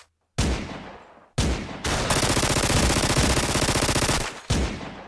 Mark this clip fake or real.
real